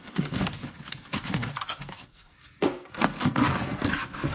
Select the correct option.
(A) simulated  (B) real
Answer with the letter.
A